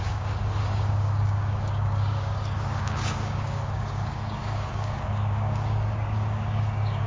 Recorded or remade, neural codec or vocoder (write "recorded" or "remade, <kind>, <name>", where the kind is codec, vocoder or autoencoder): remade, codec, DAC